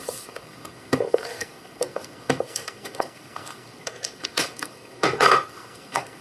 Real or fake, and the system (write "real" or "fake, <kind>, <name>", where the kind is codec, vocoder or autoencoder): fake, codec, SNAC